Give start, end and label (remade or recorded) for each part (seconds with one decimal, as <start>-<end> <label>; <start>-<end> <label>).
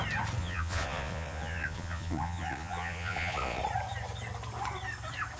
0.0-0.4 recorded; 0.4-3.6 remade; 3.6-5.4 recorded